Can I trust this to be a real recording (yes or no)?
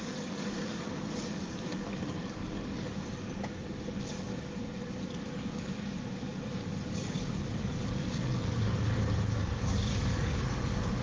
no